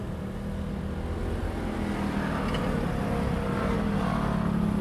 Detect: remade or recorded recorded